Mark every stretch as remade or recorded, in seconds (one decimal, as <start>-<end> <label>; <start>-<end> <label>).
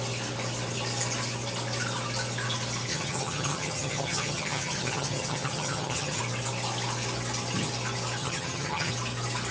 0.0-2.9 recorded; 2.9-6.2 remade; 6.2-8.2 recorded; 8.2-8.9 remade; 8.9-9.5 recorded